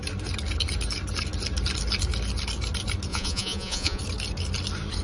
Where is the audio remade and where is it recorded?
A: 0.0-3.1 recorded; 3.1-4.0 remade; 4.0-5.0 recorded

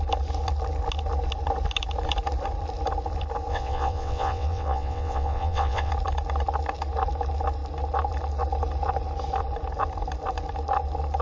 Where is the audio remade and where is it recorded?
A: 0.0-3.5 recorded; 3.5-5.9 remade; 5.9-11.2 recorded

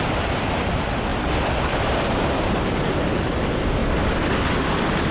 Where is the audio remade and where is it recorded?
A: 0.0-1.1 recorded; 1.1-2.3 remade; 2.3-3.8 recorded; 3.8-4.4 remade; 4.4-5.1 recorded

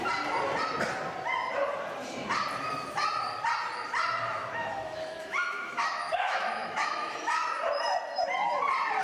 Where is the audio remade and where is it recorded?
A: 0.0-4.4 recorded; 4.4-7.4 remade; 7.4-9.0 recorded